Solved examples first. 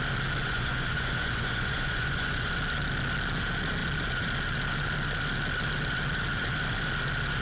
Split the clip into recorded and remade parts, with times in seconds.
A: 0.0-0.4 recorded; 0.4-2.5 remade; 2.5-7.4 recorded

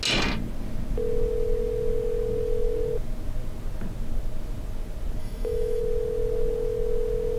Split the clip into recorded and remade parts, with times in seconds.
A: 0.0-5.2 recorded; 5.2-5.8 remade; 5.8-7.4 recorded

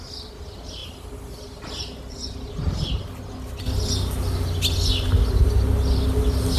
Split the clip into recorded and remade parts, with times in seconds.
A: 0.0-6.6 recorded